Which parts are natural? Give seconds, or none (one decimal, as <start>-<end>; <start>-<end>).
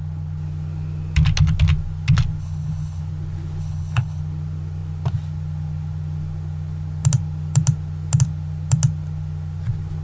0.0-2.4; 3.0-3.6; 4.2-10.0